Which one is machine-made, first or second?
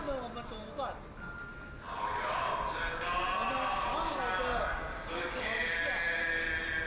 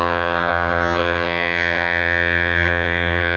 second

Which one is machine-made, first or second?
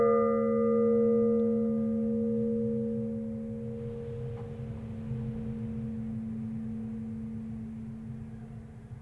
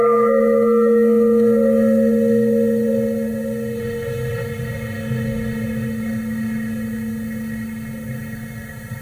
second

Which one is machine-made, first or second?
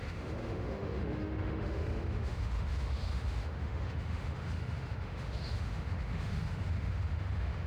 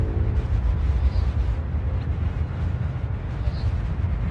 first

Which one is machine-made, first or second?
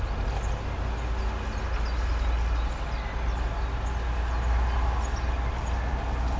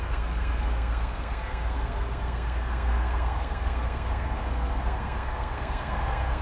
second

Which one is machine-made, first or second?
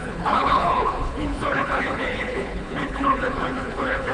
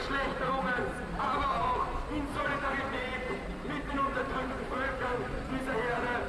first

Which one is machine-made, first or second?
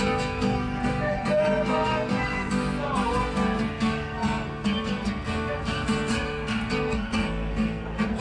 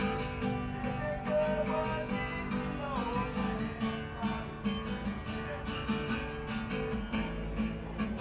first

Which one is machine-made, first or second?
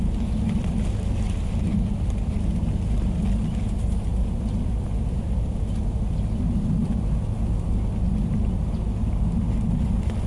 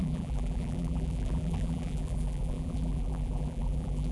second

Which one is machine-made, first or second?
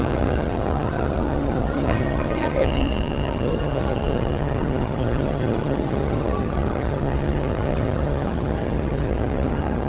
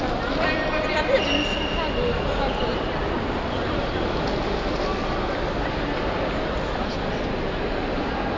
first